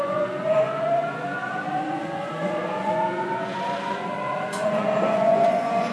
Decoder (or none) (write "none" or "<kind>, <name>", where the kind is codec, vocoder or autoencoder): vocoder, Vocos